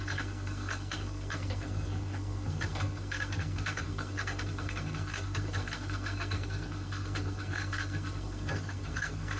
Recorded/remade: remade